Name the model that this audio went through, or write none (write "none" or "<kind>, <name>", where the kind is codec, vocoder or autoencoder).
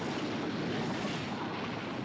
none